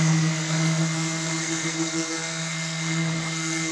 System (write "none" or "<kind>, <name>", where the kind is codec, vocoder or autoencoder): codec, SNAC